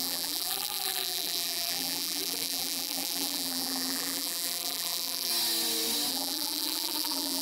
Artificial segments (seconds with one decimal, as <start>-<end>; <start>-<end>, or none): 0.0-5.3; 6.1-7.4